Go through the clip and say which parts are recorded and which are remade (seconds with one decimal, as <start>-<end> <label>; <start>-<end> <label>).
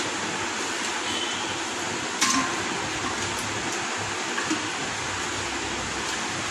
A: 0.0-6.5 recorded